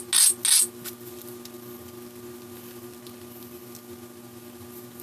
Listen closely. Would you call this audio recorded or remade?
recorded